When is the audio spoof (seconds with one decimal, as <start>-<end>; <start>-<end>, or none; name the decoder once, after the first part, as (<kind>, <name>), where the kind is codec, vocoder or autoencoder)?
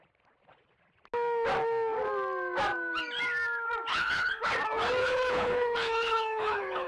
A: 3.9-4.5 (codec, HILCodec); 5.0-6.9